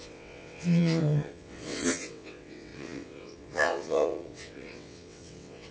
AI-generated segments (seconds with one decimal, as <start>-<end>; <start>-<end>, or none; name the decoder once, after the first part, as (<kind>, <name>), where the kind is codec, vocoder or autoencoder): 0.0-5.7 (vocoder, WaveNeXt)